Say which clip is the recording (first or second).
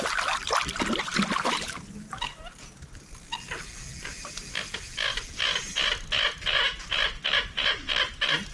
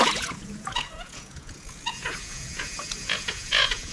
first